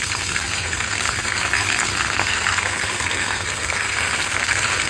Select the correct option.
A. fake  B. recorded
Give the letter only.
A